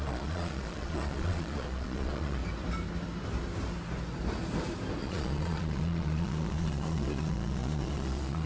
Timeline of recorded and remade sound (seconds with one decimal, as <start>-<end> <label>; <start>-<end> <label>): 0.0-2.4 remade; 2.4-5.0 recorded; 5.0-8.5 remade